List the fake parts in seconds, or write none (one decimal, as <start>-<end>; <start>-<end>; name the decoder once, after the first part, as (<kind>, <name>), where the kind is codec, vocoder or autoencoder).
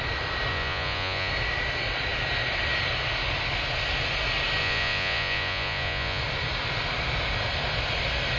0.5-1.3 (vocoder, Vocos); 4.6-6.2